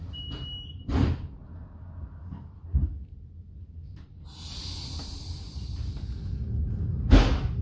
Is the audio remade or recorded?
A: recorded